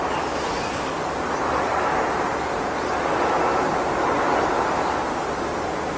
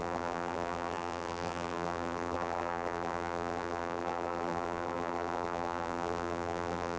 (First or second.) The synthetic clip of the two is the second